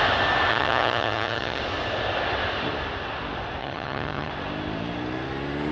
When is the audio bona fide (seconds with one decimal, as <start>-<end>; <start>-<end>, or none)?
0.0-0.5; 1.6-3.6; 4.3-5.7